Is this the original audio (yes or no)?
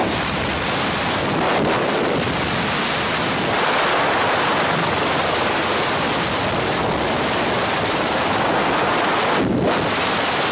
yes